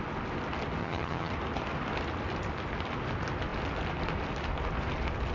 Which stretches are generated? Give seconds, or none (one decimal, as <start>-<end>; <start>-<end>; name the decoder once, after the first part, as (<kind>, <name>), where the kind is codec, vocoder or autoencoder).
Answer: 0.8-1.3 (vocoder, HiFi-GAN)